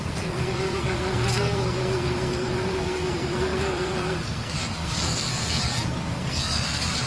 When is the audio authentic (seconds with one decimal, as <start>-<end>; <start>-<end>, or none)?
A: none